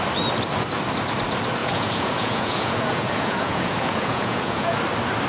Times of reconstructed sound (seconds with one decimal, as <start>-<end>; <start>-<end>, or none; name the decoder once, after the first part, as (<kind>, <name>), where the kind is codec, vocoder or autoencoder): 1.6-4.8 (vocoder, Vocos)